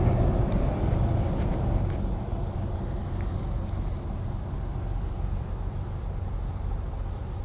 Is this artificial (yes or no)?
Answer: no